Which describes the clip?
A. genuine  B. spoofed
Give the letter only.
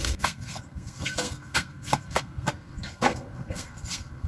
B